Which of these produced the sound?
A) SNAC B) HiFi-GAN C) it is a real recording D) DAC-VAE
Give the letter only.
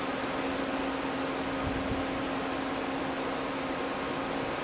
C